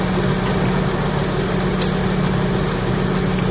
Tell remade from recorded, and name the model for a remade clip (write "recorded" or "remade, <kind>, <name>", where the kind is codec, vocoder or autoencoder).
recorded